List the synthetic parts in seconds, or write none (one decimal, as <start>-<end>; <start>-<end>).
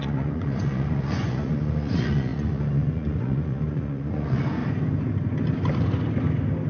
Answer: 0.0-4.6